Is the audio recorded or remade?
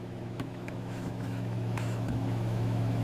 remade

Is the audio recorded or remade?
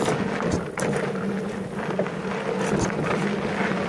recorded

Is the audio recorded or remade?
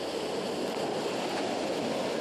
recorded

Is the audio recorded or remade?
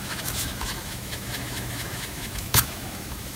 remade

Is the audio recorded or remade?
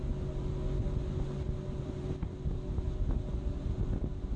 recorded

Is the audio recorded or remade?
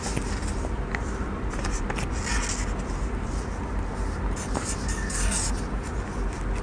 recorded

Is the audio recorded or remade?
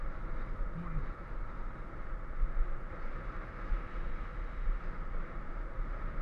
recorded